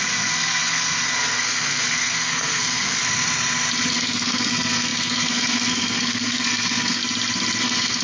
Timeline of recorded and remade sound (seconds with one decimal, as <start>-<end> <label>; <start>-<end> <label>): 0.0-3.0 remade; 3.0-3.9 recorded; 3.9-7.0 remade; 7.0-7.6 recorded; 7.6-8.0 remade